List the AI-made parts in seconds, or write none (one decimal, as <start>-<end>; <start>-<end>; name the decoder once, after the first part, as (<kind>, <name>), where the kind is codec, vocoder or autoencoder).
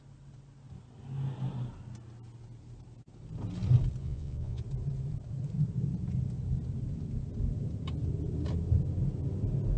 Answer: 4.0-4.6 (vocoder, Vocos)